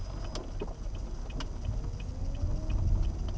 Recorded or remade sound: recorded